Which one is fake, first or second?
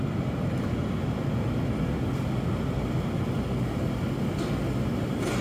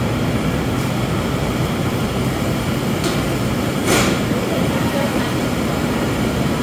second